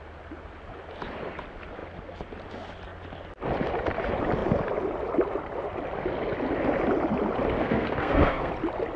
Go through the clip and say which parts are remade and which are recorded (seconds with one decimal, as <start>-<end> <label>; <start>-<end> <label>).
0.0-7.6 recorded; 7.6-8.5 remade; 8.5-9.0 recorded

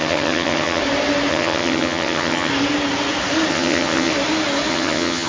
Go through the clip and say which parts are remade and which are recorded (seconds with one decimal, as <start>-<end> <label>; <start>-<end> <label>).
0.0-0.8 remade; 0.8-1.3 recorded; 1.3-2.5 remade; 2.5-3.5 recorded; 3.5-4.1 remade; 4.1-4.7 recorded; 4.7-5.3 remade

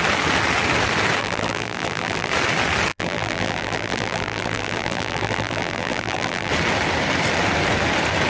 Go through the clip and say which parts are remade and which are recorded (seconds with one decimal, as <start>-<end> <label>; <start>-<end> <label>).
0.0-1.2 recorded; 1.2-2.3 remade; 2.3-2.9 recorded; 2.9-6.5 remade; 6.5-8.3 recorded

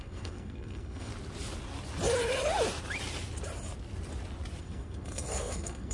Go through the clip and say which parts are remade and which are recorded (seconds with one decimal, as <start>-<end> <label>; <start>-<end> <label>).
0.0-1.1 remade; 1.1-4.6 recorded; 4.6-5.9 remade

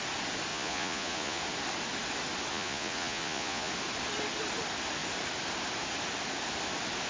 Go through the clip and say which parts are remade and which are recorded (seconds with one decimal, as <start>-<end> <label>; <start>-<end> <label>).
0.0-0.5 recorded; 0.5-1.4 remade; 1.4-2.5 recorded; 2.5-3.7 remade; 3.7-7.1 recorded